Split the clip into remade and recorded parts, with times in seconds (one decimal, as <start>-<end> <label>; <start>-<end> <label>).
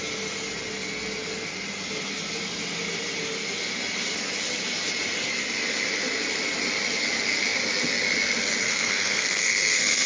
0.0-8.7 recorded; 8.7-10.1 remade